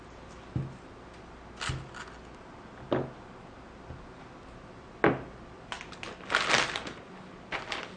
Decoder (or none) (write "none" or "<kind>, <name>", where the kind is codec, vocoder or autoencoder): none